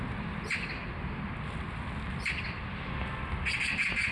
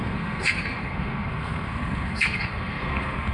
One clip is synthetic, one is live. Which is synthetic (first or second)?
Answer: second